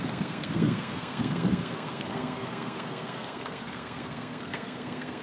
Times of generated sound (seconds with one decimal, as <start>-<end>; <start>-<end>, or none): 0.0-5.2